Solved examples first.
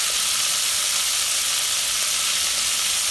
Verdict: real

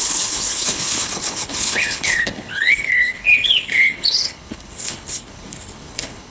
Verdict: fake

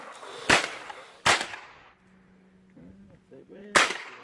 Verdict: real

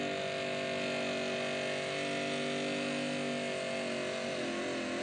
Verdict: real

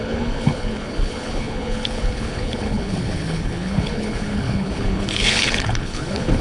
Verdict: fake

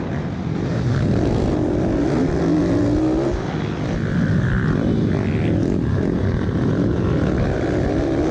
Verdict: real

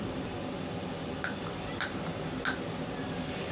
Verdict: real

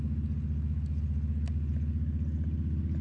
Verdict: real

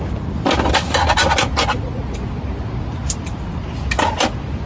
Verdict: real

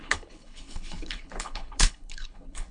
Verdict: fake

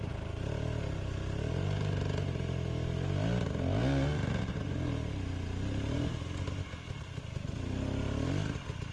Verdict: real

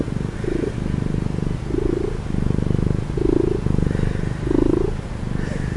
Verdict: real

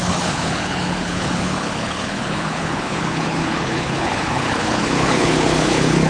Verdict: fake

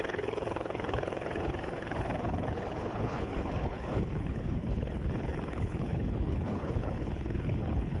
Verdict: fake